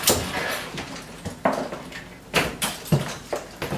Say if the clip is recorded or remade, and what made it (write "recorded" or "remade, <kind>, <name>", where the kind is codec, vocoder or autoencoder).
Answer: recorded